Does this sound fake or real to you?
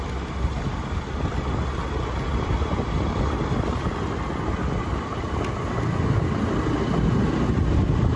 real